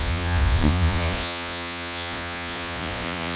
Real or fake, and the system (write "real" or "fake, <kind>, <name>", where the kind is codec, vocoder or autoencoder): fake, vocoder, Vocos